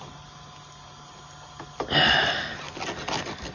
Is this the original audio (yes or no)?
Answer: yes